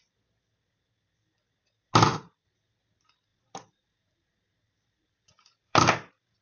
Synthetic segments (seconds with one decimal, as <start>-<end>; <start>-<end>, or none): 2.1-2.6; 3.3-6.4